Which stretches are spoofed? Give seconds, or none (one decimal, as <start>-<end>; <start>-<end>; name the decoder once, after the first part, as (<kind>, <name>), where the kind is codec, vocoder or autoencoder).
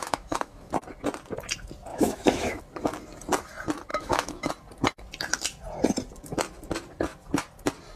0.0-0.7 (autoencoder, DAC-VAE); 1.9-2.6; 3.9-4.5